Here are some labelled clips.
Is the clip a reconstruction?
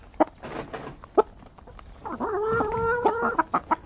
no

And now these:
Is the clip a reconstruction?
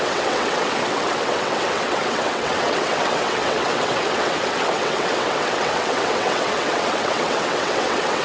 yes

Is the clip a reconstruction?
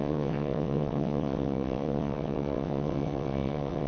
yes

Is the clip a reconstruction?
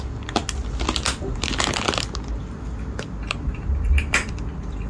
no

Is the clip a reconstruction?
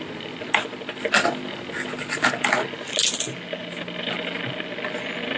no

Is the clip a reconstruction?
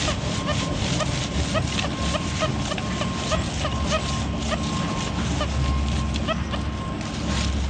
no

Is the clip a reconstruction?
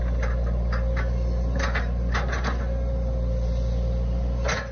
no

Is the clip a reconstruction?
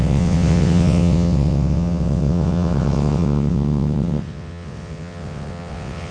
yes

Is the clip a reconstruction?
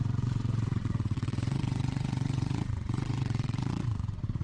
yes